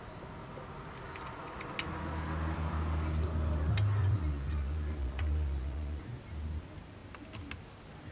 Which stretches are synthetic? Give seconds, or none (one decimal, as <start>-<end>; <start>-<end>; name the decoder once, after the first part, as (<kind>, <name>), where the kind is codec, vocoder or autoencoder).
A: 4.0-6.0 (vocoder, Vocos)